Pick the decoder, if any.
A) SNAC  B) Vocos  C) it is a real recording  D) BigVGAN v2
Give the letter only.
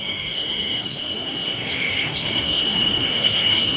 A